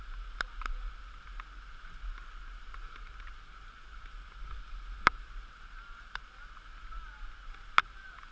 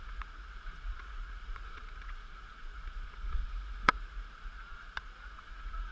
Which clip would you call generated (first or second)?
second